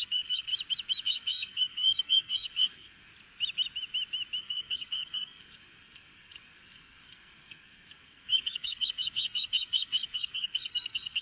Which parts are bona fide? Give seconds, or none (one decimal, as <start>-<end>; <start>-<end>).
0.5-1.0; 3.1-4.4